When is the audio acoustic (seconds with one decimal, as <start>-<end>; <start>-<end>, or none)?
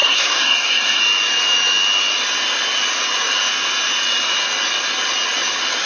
1.0-5.9